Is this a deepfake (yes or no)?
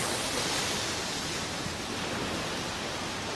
no